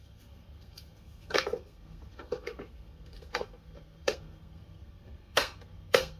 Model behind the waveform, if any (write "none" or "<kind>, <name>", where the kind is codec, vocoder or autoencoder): codec, SNAC